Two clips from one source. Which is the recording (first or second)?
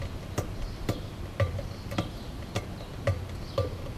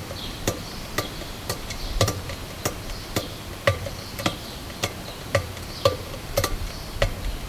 first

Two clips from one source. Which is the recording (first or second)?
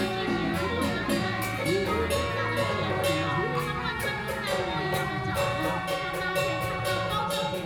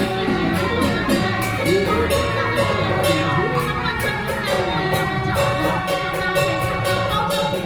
first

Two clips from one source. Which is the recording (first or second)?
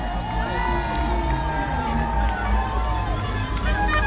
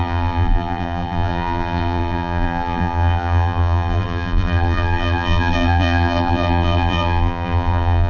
first